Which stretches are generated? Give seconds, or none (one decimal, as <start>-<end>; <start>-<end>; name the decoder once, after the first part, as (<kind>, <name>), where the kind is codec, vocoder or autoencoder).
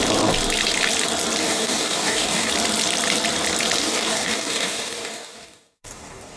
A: 1.4-2.5 (codec, DAC); 3.8-6.4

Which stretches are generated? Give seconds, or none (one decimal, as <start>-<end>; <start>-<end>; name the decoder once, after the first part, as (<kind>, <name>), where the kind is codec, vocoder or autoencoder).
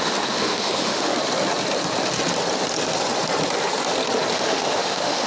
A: 0.0-1.1 (autoencoder, DAC-VAE); 4.3-5.3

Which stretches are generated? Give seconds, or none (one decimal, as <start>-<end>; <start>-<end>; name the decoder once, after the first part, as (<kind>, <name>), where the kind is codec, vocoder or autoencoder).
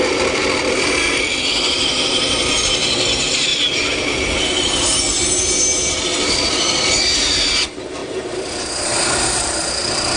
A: none